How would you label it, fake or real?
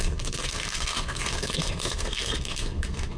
fake